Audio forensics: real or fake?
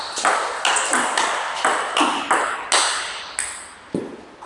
real